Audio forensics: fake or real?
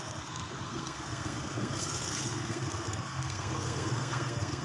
fake